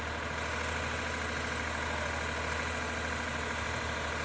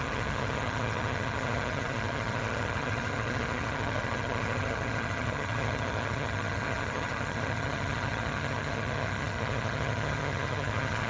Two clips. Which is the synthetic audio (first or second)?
second